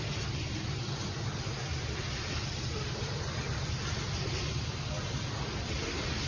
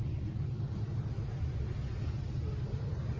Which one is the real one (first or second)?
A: second